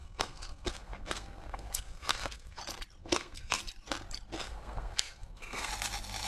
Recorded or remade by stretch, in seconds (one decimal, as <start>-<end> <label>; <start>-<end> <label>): 0.0-2.6 remade; 2.6-3.0 recorded; 3.0-3.6 remade; 3.6-4.4 recorded; 4.4-5.7 remade; 5.7-6.3 recorded